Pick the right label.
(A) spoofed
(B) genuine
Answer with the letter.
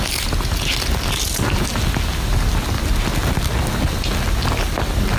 B